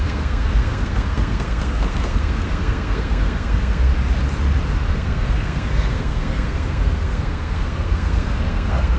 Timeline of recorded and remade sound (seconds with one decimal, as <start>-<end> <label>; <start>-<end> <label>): 0.0-3.9 remade; 3.9-4.9 recorded; 4.9-9.0 remade

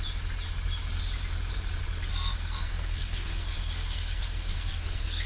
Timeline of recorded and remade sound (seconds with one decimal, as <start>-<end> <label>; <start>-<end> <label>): 0.0-2.1 recorded; 2.1-5.3 remade

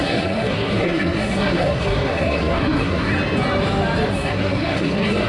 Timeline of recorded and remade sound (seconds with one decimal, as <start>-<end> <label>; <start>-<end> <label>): 0.0-3.1 remade; 3.1-4.1 recorded; 4.1-5.3 remade

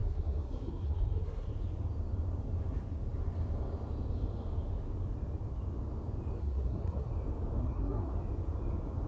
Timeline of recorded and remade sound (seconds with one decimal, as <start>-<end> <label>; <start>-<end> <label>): 0.0-1.5 remade; 1.5-6.4 recorded; 6.4-7.1 remade; 7.1-7.6 recorded; 7.6-8.1 remade; 8.1-9.1 recorded

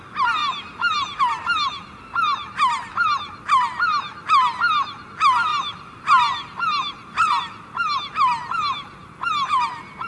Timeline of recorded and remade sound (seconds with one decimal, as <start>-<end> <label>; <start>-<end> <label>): 0.0-10.1 recorded